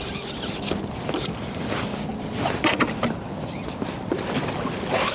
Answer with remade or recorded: recorded